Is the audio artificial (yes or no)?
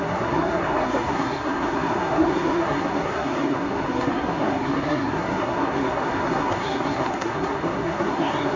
yes